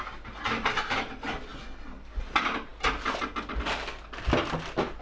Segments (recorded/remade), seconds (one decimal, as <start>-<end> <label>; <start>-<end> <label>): 0.0-5.0 recorded